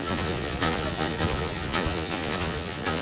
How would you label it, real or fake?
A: fake